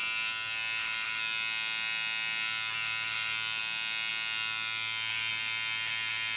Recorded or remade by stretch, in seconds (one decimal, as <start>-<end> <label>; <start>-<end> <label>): 0.0-6.4 recorded